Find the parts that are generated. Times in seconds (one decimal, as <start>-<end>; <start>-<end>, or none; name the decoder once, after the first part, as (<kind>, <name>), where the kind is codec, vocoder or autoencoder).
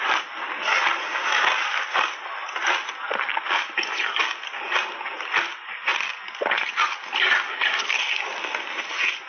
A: none